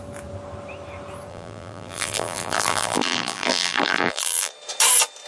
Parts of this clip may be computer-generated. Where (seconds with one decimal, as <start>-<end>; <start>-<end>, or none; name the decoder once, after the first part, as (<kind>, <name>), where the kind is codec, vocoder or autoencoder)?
1.3-4.5 (vocoder, BigVGAN v2)